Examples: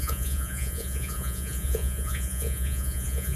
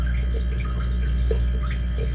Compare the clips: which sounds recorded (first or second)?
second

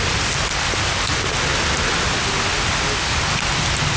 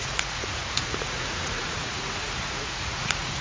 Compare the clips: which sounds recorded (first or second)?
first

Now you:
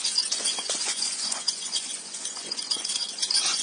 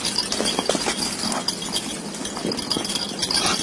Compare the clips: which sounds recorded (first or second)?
second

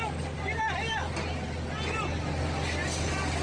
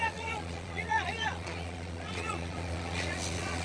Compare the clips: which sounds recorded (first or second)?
first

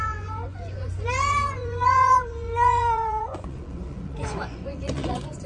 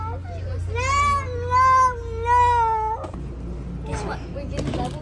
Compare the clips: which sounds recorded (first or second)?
second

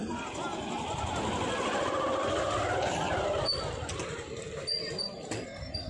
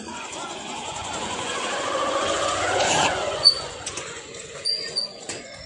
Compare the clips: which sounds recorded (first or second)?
first